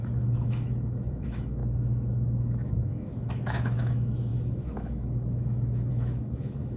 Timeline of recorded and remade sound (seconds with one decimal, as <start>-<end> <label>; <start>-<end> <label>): 0.0-1.6 remade; 1.6-2.4 recorded; 2.4-6.8 remade